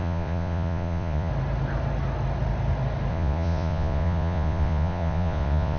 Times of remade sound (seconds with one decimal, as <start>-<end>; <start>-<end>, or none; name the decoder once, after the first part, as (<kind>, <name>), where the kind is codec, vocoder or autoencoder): 0.0-1.3 (vocoder, Vocos); 3.1-5.8